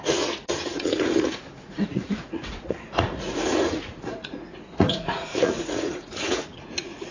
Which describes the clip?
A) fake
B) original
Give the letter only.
A